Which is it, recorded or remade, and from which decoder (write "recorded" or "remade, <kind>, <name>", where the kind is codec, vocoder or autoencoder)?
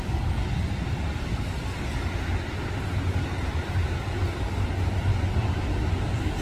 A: recorded